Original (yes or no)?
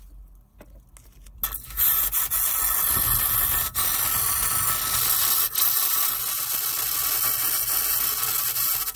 yes